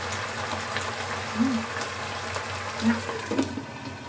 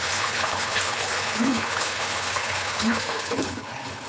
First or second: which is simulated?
second